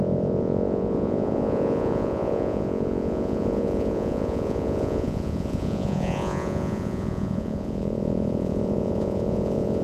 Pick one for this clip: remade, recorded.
remade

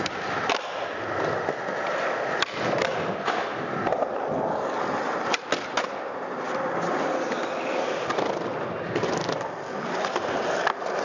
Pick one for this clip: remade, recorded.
recorded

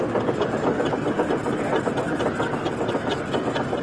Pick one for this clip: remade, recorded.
recorded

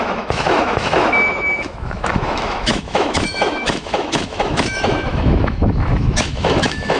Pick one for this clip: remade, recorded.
remade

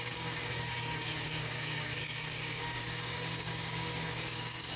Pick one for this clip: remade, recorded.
remade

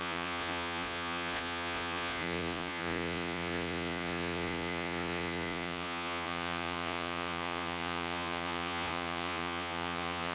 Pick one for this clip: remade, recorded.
remade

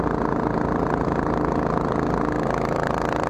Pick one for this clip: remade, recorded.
recorded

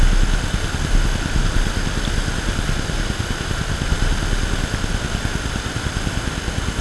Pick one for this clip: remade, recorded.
recorded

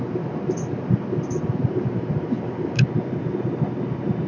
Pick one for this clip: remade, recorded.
recorded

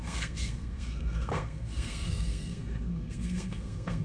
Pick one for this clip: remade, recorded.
remade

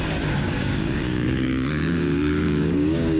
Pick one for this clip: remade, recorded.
remade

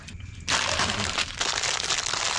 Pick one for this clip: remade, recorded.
recorded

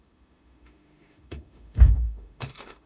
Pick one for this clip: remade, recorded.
remade